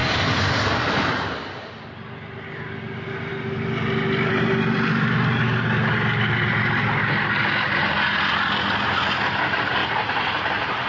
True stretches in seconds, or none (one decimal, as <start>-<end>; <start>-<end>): 0.0-10.9